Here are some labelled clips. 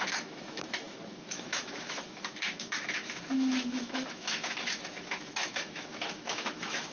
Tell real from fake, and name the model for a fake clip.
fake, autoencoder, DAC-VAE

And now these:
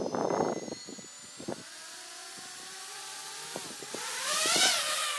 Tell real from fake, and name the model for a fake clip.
real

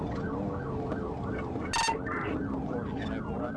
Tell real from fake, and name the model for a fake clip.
real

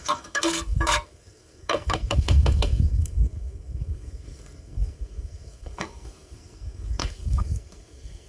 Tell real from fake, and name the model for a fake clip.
fake, codec, SNAC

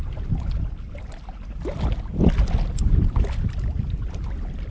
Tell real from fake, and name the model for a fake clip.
real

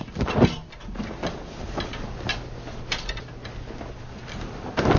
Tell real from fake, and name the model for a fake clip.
real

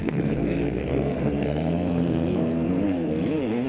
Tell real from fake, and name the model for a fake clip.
fake, codec, SNAC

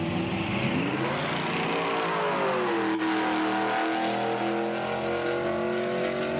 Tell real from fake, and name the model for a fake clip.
real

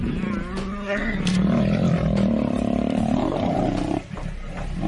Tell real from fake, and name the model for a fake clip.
real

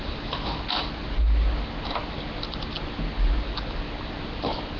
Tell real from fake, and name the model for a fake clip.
real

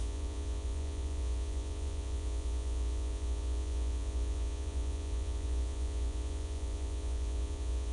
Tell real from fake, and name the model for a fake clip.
fake, vocoder, Vocos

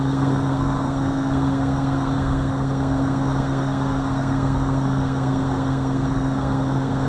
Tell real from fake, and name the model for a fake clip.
fake, codec, SNAC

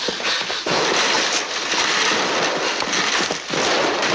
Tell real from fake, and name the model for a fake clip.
real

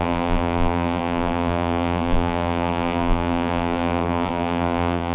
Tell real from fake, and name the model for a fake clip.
fake, vocoder, BigVGAN v2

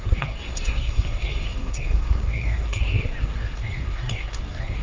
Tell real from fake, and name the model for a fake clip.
fake, codec, SNAC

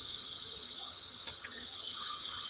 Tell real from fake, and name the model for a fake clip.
fake, vocoder, HiFi-GAN